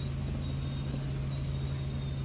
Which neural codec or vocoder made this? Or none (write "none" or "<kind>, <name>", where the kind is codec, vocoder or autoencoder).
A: none